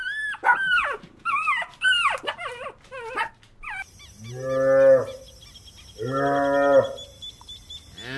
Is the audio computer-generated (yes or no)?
no